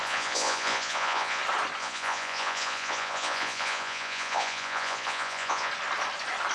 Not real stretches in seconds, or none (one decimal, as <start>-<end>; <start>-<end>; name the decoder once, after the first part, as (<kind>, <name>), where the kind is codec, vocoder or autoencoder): 0.0-1.4 (vocoder, Vocos); 1.8-5.7